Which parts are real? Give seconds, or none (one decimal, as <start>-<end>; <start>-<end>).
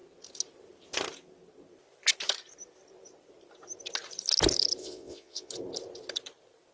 0.0-4.8; 5.5-6.7